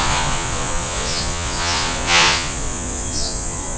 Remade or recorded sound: remade